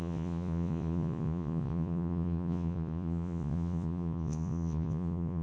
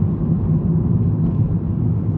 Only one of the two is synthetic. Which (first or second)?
first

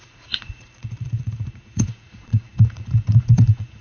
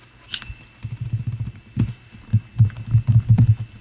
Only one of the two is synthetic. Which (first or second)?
first